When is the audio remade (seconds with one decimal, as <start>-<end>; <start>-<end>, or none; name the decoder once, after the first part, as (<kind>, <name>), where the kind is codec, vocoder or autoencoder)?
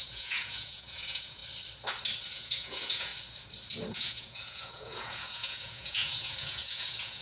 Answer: 0.0-1.4 (vocoder, Vocos); 2.3-3.1; 3.9-7.2